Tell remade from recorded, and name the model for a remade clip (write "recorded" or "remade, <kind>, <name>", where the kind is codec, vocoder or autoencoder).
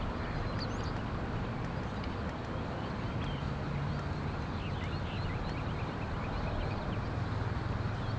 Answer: recorded